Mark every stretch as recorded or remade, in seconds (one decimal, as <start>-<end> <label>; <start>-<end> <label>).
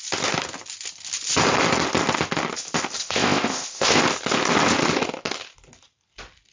0.0-3.0 recorded; 3.0-4.0 remade; 4.0-6.5 recorded